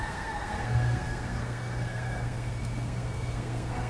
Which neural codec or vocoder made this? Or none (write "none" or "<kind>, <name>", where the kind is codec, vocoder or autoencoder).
codec, SNAC